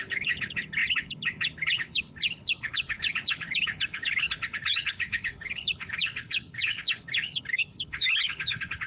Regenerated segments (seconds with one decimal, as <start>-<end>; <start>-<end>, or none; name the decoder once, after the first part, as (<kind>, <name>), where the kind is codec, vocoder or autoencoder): 0.0-8.9 (codec, HILCodec)